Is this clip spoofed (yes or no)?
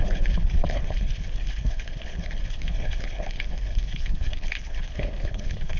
yes